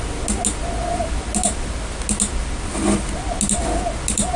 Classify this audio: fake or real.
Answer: real